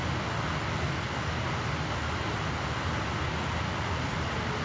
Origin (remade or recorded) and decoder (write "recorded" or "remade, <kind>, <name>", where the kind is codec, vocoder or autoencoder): recorded